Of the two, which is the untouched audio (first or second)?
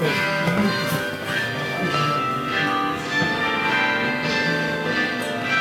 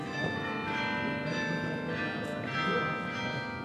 second